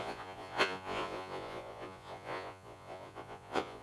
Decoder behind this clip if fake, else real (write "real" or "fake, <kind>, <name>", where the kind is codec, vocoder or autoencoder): fake, vocoder, Vocos